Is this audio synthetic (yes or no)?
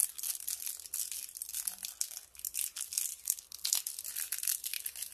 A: no